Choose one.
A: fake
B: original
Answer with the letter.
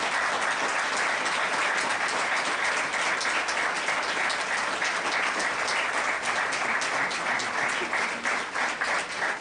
B